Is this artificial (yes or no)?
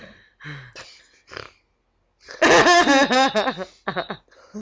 no